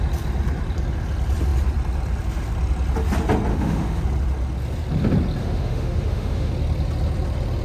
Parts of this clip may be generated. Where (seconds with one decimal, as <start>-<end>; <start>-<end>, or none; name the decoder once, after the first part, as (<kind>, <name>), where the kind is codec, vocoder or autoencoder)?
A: 3.5-4.0 (autoencoder, DAC-VAE); 5.4-6.5